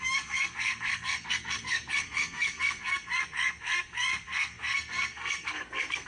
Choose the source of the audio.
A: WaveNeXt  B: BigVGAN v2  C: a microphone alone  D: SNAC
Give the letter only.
D